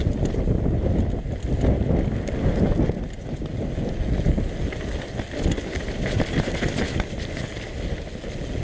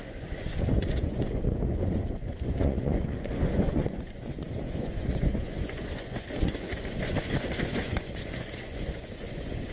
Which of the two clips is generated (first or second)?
second